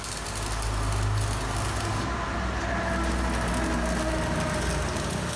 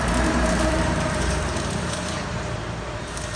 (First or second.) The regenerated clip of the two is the second